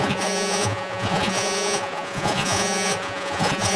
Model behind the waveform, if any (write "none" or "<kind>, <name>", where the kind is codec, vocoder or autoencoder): vocoder, Vocos